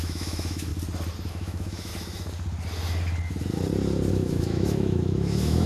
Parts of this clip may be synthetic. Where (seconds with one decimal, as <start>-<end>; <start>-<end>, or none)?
0.0-0.7; 1.3-1.9; 4.1-5.7